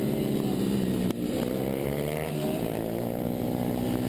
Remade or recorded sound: remade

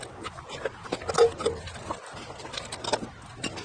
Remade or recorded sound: recorded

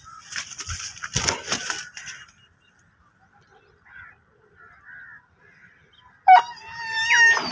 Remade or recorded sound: recorded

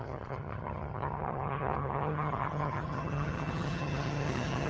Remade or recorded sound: remade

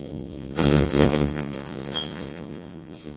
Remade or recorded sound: remade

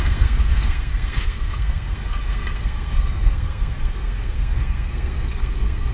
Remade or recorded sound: remade